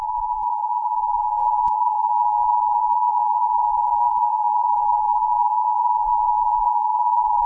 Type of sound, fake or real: fake